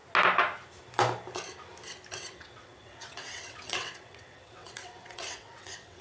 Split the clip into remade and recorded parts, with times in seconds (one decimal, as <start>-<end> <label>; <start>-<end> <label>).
0.0-2.1 recorded; 2.1-6.0 remade

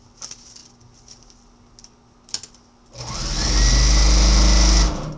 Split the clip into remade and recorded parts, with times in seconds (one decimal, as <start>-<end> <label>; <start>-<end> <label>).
0.0-5.2 recorded

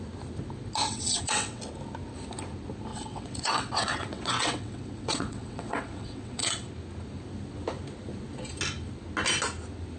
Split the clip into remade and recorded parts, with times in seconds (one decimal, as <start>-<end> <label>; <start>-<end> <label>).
0.0-0.8 recorded; 0.8-1.6 remade; 1.6-2.9 recorded; 2.9-6.7 remade; 6.7-10.0 recorded

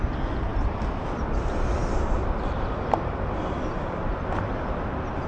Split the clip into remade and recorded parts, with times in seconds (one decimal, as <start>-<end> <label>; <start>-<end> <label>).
0.0-5.3 recorded

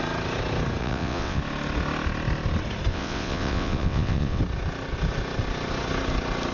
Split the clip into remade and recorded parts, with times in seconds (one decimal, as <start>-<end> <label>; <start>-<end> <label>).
0.0-0.8 recorded; 0.8-1.4 remade; 1.4-2.9 recorded; 2.9-4.4 remade; 4.4-6.5 recorded